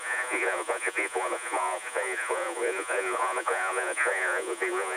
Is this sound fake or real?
fake